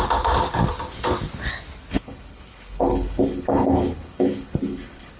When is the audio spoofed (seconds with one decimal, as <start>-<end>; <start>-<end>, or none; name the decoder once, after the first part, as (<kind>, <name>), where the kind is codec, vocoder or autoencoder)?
1.9-5.2 (codec, HILCodec)